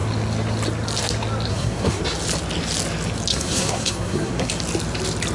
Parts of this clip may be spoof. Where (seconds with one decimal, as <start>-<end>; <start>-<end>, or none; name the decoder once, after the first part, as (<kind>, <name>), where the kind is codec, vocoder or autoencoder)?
1.5-2.0 (codec, SNAC); 3.3-4.5